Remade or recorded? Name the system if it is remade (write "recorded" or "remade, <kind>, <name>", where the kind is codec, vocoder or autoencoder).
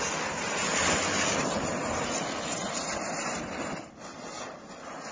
recorded